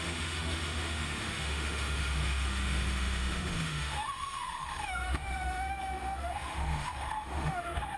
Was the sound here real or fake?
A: fake